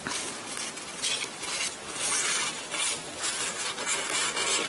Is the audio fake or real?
real